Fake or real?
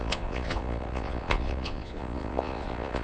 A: fake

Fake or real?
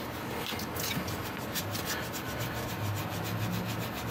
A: real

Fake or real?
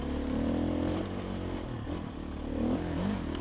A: real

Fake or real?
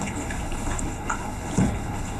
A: fake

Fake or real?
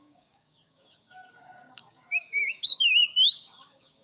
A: fake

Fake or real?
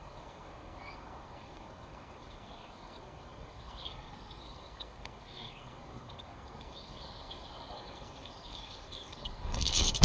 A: fake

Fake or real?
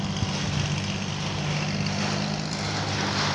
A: real